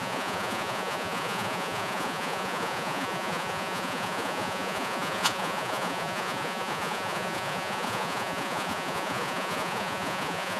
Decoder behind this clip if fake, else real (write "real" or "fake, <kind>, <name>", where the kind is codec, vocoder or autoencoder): fake, vocoder, Vocos